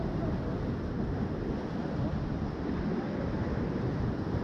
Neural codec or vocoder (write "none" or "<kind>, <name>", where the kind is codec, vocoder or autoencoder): none